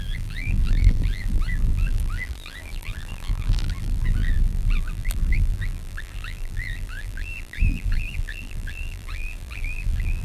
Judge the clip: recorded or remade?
remade